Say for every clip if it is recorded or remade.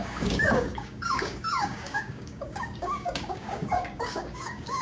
remade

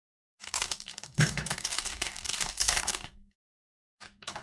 remade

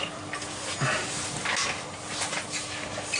recorded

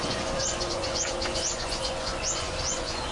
remade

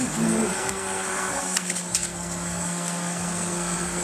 remade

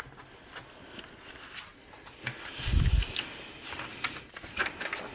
recorded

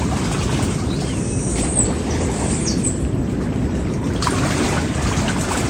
recorded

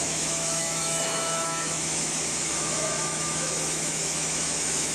remade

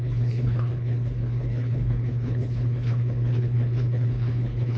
remade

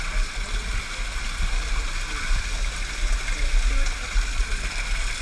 recorded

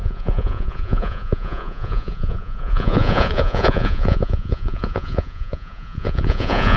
remade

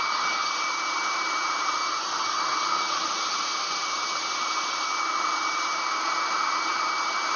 remade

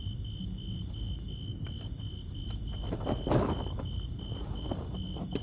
recorded